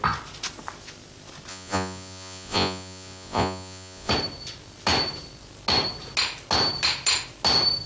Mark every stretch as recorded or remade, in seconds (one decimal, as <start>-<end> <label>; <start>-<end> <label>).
0.0-1.5 recorded; 1.5-4.1 remade; 4.1-7.9 recorded